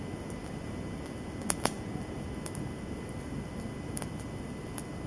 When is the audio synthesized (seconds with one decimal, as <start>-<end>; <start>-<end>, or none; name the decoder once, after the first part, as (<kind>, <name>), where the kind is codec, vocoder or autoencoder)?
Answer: none